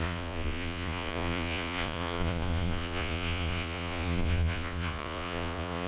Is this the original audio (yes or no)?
no